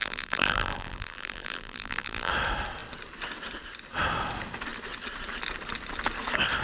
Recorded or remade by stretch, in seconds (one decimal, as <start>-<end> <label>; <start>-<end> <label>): 0.0-2.3 remade; 2.3-6.6 recorded